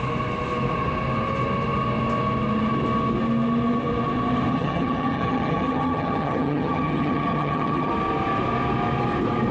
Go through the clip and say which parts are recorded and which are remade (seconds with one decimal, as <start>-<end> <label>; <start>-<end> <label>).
0.0-4.5 recorded; 4.5-7.9 remade; 7.9-9.5 recorded